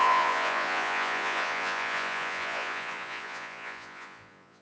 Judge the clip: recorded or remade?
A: remade